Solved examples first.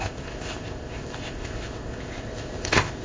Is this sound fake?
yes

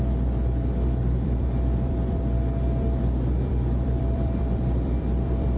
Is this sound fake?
yes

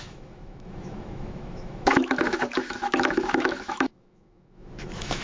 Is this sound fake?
yes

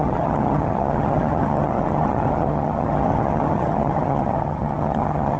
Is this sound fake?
yes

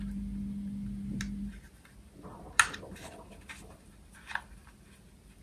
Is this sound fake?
no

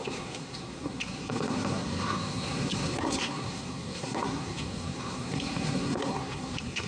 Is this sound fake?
yes